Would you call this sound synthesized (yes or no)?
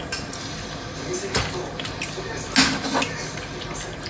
no